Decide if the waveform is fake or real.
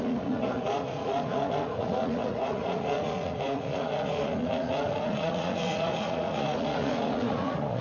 fake